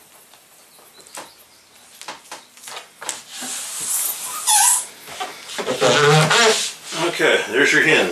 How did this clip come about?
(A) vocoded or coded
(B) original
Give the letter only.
B